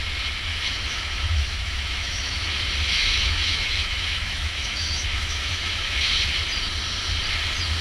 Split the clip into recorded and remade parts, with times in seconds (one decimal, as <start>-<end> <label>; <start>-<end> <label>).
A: 0.0-0.5 recorded; 0.5-2.6 remade; 2.6-3.0 recorded; 3.0-6.2 remade; 6.2-7.8 recorded